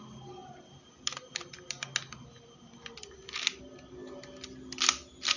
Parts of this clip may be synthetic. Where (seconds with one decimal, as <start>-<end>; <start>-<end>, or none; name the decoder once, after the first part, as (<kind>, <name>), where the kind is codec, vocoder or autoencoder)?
none

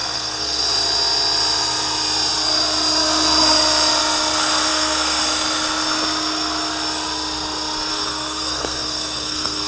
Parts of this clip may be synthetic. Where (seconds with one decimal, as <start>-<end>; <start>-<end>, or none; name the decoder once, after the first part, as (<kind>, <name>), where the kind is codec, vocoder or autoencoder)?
0.0-0.6 (codec, SNAC); 4.7-5.2; 7.9-9.7

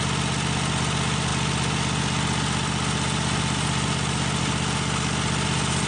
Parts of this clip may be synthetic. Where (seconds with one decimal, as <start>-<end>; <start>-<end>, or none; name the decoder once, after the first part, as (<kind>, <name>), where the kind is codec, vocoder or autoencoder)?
none

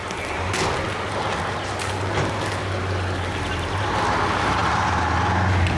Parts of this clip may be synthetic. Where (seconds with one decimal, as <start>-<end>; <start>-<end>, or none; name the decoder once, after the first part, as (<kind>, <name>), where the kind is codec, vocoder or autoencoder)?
none